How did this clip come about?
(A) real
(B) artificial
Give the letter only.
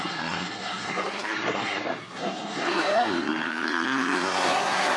B